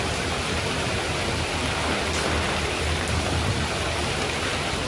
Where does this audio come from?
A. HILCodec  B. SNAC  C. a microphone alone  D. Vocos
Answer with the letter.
C